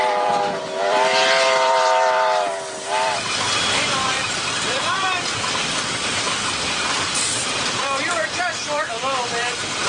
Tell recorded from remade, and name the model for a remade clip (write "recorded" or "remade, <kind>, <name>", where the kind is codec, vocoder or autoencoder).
remade, vocoder, BigVGAN v2